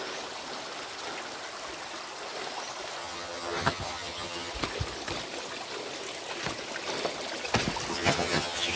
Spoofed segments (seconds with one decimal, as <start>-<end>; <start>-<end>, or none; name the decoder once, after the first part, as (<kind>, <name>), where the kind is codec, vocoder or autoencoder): 3.0-4.5 (vocoder, HiFi-GAN); 7.9-8.8